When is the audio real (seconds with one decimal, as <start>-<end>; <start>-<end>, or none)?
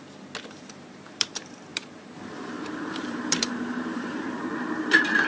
0.0-0.5